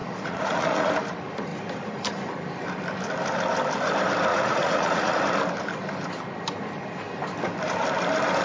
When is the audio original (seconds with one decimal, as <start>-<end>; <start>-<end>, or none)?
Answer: 0.9-4.3; 5.2-8.4